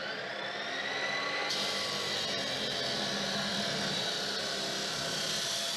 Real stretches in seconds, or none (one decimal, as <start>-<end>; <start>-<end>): 0.0-5.8